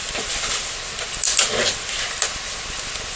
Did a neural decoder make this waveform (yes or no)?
no